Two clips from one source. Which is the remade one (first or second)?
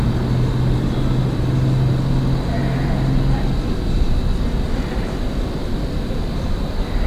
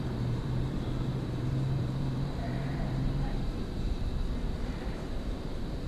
second